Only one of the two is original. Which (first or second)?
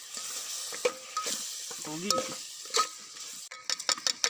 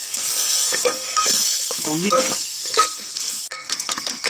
first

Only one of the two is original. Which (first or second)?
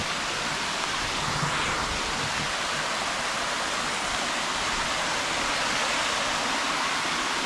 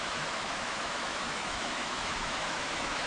first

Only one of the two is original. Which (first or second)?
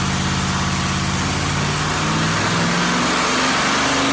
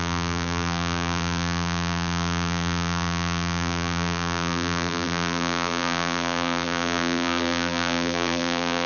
first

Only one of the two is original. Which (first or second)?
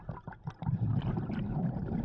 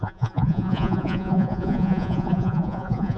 first